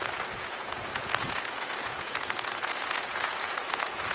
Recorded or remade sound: remade